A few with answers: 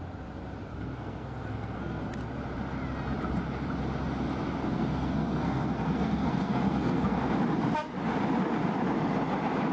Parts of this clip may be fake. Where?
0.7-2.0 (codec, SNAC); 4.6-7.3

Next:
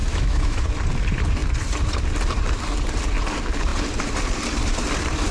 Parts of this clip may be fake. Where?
0.0-0.6 (autoencoder, DAC-VAE)

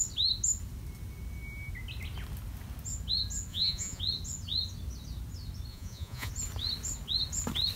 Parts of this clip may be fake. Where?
3.5-4.0 (vocoder, Vocos); 5.7-6.3

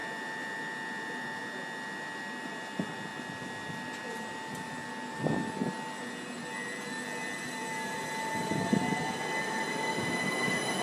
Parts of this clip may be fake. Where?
none

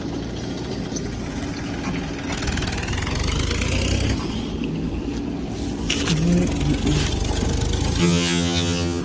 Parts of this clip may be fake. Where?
8.0-9.0 (vocoder, HiFi-GAN)